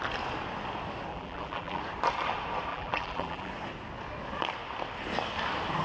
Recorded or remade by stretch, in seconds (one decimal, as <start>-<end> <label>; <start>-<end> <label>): 0.0-1.1 recorded; 1.1-1.8 remade; 1.8-2.7 recorded; 2.7-3.5 remade; 3.5-5.8 recorded

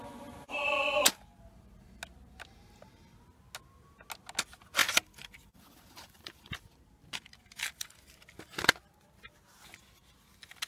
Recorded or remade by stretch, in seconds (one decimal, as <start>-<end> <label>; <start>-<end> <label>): 0.0-4.8 recorded; 4.8-6.5 remade; 6.5-10.7 recorded

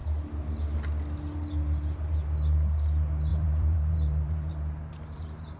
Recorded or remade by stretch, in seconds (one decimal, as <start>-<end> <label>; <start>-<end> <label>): 0.0-3.3 recorded; 3.3-5.6 remade

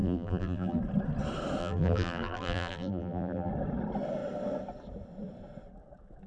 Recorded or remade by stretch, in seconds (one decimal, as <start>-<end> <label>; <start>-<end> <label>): 0.0-0.8 remade; 0.8-1.6 recorded; 1.6-3.5 remade; 3.5-6.3 recorded

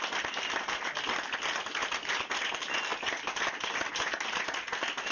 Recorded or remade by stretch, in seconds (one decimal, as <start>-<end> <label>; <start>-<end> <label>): 0.0-5.1 recorded

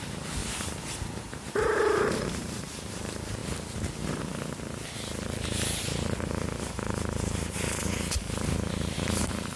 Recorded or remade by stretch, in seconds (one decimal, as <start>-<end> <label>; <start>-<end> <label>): 0.0-0.4 remade; 0.4-1.2 recorded; 1.2-3.4 remade; 3.4-6.7 recorded; 6.7-7.8 remade; 7.8-8.7 recorded; 8.7-9.6 remade